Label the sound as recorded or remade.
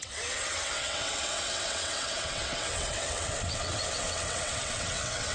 remade